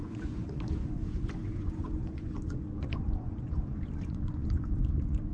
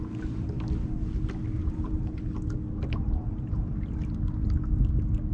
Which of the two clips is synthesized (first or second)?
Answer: first